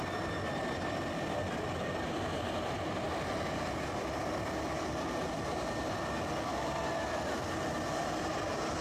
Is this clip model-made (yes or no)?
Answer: yes